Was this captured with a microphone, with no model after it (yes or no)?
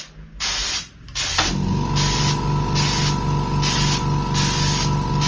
yes